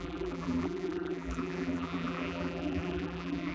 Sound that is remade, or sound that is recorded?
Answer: remade